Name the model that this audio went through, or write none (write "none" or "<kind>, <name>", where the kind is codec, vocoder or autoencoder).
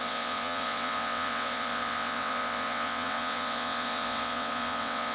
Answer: vocoder, WaveNeXt